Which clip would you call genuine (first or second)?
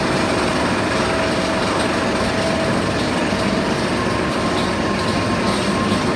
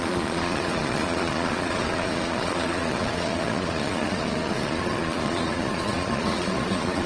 first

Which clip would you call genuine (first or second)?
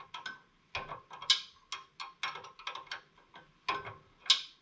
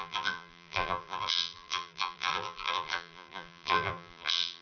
first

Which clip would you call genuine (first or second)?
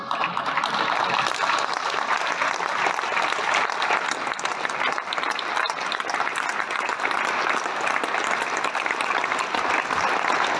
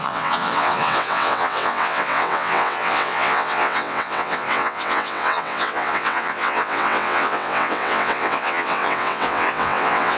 first